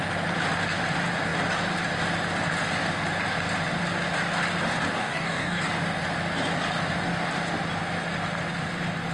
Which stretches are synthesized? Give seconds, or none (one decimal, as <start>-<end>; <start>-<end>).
5.0-5.7